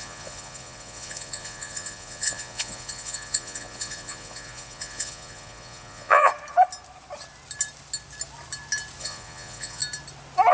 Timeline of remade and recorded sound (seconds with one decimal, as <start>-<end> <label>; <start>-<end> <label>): 0.0-6.3 remade; 6.3-9.0 recorded; 9.0-9.8 remade; 9.8-10.5 recorded